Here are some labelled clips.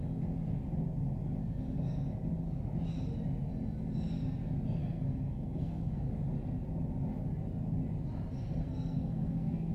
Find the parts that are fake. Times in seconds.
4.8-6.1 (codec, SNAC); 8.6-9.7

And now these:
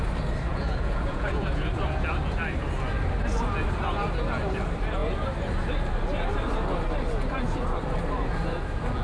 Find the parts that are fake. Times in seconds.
0.5-1.7 (vocoder, Vocos)

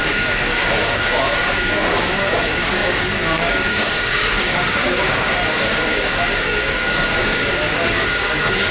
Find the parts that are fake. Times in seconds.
0.0-8.7 (codec, DAC)

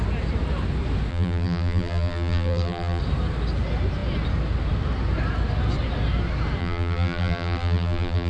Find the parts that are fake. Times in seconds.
1.1-3.0 (vocoder, BigVGAN v2); 6.6-8.3

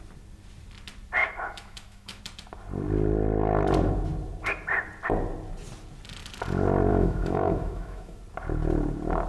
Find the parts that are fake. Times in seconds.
1.2-2.2 (autoencoder, DAC-VAE); 6.9-8.2

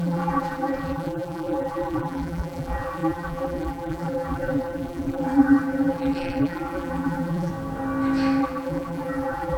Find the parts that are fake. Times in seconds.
0.0-7.5 (vocoder, BigVGAN v2); 8.4-9.6